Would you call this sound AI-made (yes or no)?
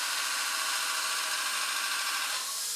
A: no